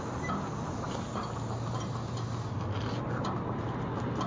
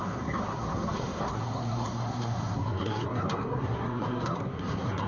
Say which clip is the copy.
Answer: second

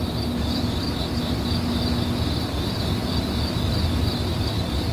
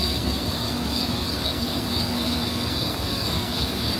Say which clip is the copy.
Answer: second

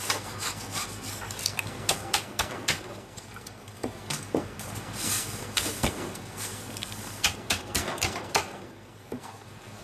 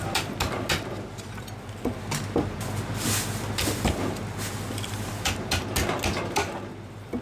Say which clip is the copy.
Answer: first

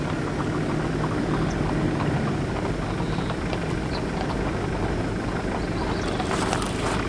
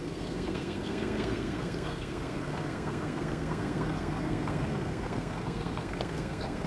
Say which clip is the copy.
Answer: second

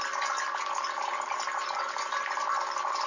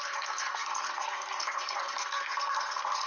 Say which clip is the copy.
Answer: second